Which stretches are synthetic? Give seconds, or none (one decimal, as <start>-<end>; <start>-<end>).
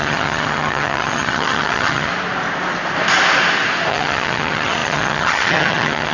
0.0-2.1; 3.9-6.1